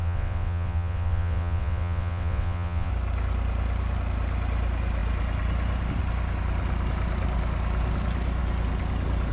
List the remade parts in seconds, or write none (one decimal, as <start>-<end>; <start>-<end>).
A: 0.0-2.9